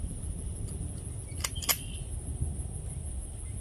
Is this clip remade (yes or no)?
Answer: no